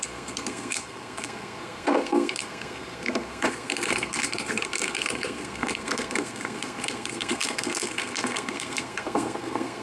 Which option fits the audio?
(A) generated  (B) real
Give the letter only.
A